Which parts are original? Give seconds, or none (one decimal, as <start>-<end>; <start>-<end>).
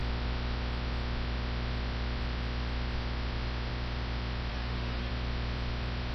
0.0-4.5; 5.1-6.1